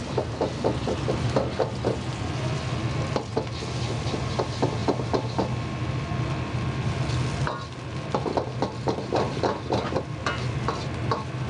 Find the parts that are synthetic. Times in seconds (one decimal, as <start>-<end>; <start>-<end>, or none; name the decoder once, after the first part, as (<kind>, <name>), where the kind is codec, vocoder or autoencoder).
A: none